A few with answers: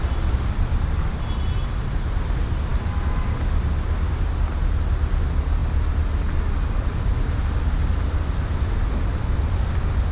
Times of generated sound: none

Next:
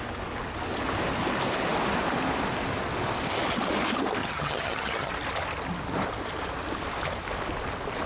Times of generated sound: 4.2-5.1 (vocoder, HiFi-GAN)

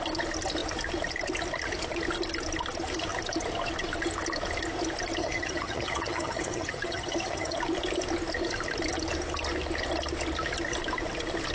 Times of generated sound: 5.2-7.6 (vocoder, HiFi-GAN)

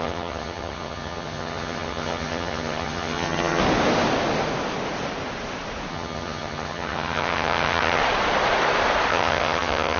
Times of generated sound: 0.0-3.6 (vocoder, HiFi-GAN); 5.9-8.0; 9.1-10.0